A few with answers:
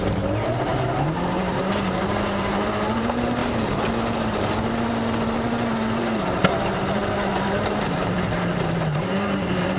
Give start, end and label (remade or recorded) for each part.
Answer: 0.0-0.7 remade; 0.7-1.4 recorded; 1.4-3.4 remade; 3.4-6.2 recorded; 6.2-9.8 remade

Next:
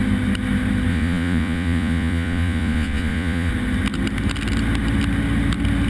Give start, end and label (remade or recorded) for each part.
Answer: 0.0-0.9 recorded; 0.9-3.5 remade; 3.5-5.9 recorded

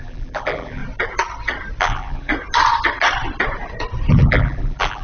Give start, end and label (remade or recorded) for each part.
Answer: 0.0-0.8 remade; 0.8-1.8 recorded; 1.8-2.3 remade; 2.3-4.1 recorded; 4.1-5.0 remade